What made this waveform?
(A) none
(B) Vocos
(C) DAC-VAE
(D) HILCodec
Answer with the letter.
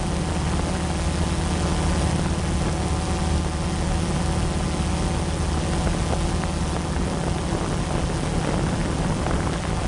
A